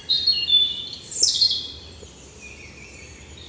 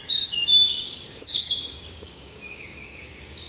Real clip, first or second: first